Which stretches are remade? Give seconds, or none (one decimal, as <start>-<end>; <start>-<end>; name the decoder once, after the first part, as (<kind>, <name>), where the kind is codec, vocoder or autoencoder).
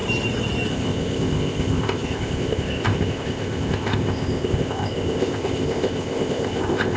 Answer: 0.7-7.0 (codec, ZipCodec)